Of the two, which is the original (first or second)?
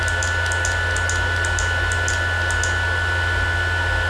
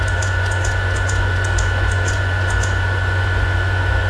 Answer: first